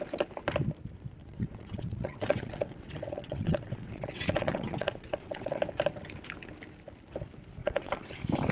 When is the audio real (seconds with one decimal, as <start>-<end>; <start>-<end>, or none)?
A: 0.0-1.2; 5.6-7.6; 8.1-8.5